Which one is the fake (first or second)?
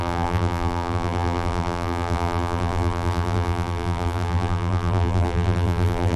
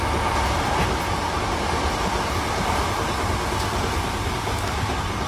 first